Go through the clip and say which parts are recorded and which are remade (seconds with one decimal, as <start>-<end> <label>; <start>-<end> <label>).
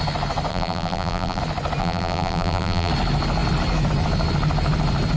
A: 0.0-0.5 recorded; 0.5-1.4 remade; 1.4-1.8 recorded; 1.8-2.9 remade; 2.9-5.2 recorded